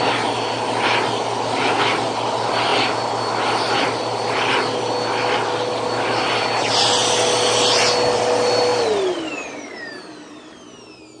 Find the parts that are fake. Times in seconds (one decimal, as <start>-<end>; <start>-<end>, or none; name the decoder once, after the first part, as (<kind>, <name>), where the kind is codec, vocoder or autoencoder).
none